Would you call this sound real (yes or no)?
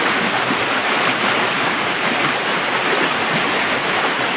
no